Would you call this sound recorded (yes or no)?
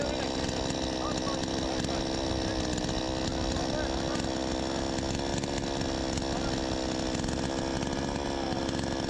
yes